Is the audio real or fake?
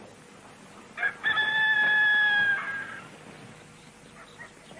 real